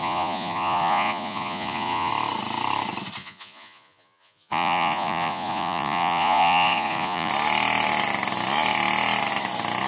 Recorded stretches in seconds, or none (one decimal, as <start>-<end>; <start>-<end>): 2.1-3.2; 7.3-9.9